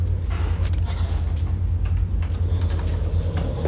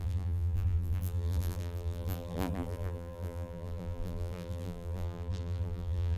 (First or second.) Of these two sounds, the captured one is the first